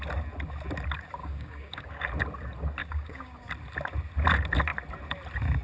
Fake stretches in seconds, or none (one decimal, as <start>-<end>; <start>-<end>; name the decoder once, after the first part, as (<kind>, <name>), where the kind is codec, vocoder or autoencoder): 1.2-2.1 (codec, DAC); 2.8-3.4